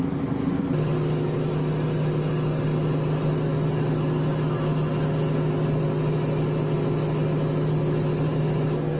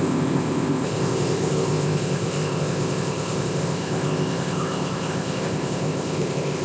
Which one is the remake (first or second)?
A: second